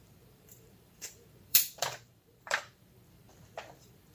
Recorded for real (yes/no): no